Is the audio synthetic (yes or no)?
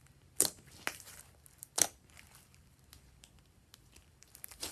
yes